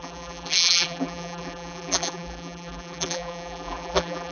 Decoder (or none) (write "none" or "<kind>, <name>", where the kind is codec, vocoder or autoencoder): vocoder, BigVGAN v2